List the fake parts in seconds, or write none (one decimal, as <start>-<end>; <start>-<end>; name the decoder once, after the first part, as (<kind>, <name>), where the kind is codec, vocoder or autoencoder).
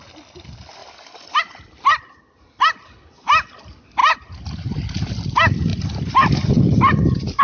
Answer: none